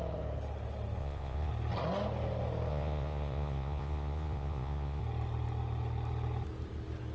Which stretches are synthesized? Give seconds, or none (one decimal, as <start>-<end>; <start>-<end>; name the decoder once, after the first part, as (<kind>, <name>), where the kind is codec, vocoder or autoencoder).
1.0-1.5 (vocoder, Vocos); 2.7-5.0